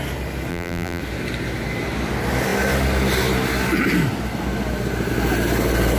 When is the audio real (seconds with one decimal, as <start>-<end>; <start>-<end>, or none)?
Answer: 0.0-0.5; 1.0-6.0